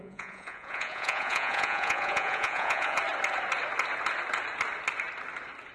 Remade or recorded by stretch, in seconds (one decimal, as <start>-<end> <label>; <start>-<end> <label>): 0.0-3.0 remade; 3.0-5.7 recorded